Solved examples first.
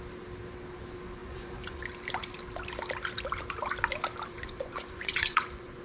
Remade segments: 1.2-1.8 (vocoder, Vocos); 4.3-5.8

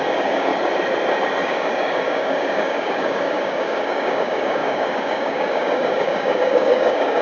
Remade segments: 0.0-0.5 (codec, DAC); 1.4-7.2

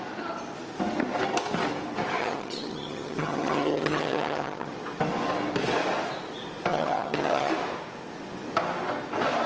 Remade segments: 2.2-4.7 (vocoder, HiFi-GAN); 6.7-7.5

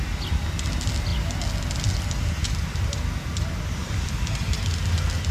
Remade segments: none

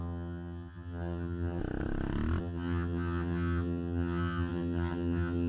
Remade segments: 0.0-1.6 (vocoder, HiFi-GAN); 2.4-5.5